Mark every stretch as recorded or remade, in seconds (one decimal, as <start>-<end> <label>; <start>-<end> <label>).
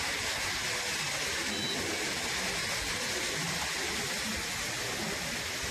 0.0-5.7 recorded